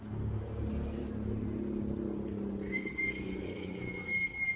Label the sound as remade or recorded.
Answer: recorded